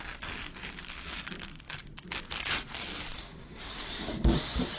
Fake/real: real